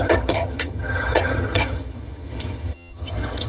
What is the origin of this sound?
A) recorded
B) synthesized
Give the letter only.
B